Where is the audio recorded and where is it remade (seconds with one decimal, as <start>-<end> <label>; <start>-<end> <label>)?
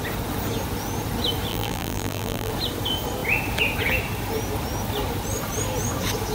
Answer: 0.0-1.5 recorded; 1.5-2.5 remade; 2.5-6.3 recorded